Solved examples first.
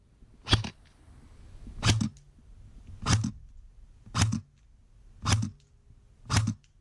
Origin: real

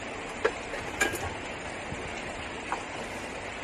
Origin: real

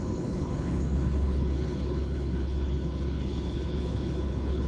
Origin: fake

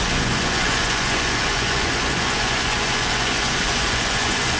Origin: fake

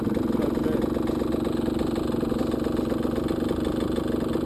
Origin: real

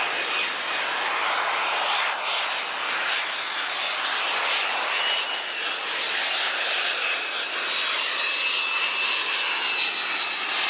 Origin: real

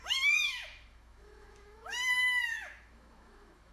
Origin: fake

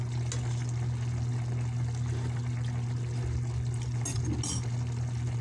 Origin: real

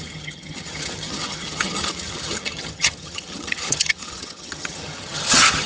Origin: fake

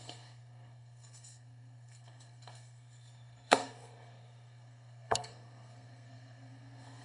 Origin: fake